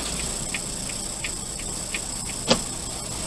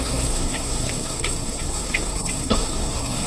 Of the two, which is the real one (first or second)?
first